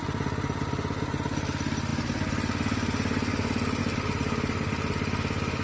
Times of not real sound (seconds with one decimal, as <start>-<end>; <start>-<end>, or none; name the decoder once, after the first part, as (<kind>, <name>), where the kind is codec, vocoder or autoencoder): none